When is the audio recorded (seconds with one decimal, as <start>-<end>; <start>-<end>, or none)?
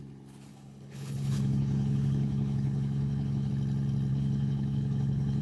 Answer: 0.0-0.5; 3.5-4.1